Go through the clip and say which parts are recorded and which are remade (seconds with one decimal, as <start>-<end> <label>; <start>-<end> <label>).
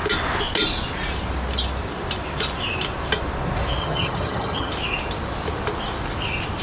0.0-3.8 recorded; 3.8-4.7 remade; 4.7-6.6 recorded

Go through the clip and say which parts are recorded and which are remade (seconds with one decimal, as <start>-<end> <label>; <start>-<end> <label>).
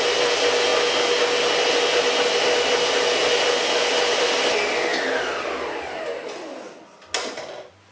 0.0-7.9 recorded